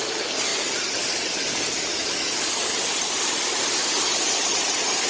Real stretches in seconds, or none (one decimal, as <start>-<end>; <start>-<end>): 0.0-1.9; 2.4-5.1

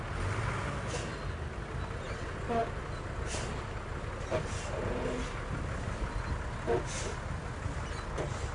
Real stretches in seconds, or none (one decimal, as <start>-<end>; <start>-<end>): 0.0-8.5

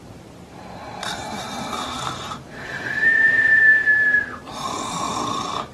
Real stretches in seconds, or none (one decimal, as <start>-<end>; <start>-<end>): 0.0-1.0; 3.6-4.4; 5.2-5.7

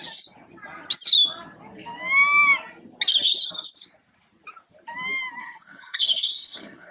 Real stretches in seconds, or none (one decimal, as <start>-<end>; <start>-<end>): 0.0-5.4

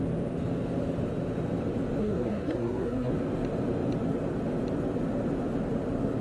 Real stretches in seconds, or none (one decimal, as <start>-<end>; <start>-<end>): 0.0-2.0; 3.1-6.2

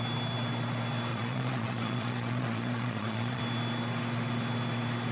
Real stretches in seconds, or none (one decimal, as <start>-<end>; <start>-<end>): 0.0-1.1; 3.4-5.1

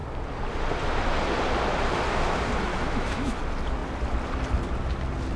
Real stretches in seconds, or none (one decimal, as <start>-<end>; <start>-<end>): 0.0-2.7; 3.4-5.4